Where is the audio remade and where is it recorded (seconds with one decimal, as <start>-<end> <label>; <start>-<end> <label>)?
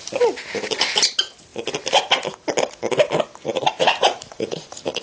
0.0-3.4 recorded; 3.4-5.0 remade